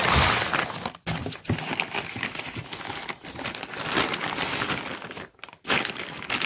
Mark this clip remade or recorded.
recorded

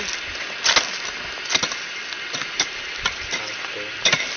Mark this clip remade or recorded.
recorded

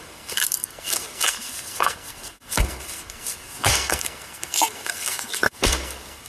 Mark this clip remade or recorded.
remade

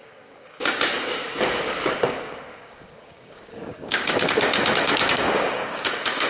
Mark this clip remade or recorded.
remade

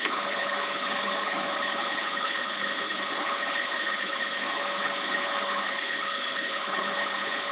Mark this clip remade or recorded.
remade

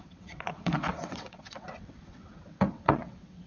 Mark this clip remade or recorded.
remade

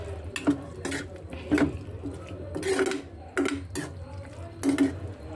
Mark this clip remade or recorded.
recorded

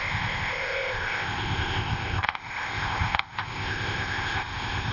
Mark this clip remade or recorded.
remade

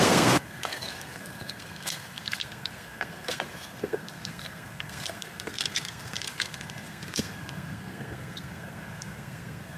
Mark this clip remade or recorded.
remade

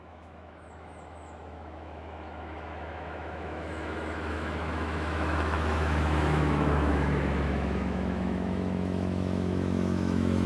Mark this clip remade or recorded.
remade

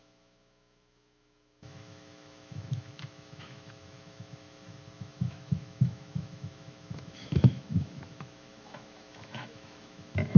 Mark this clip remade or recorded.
remade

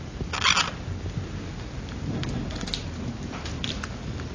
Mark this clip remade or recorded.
recorded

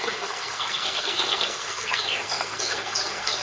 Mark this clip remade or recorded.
remade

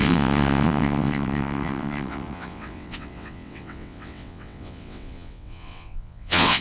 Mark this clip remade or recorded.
remade